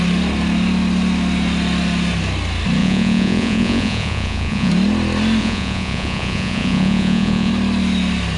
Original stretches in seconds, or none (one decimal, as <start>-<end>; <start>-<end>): 0.0-2.8; 4.7-5.4; 7.5-8.4